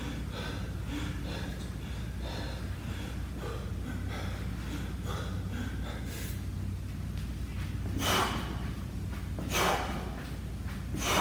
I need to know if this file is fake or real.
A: real